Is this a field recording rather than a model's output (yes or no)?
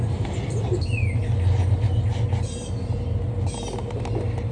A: yes